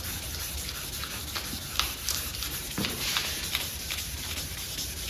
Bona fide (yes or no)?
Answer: no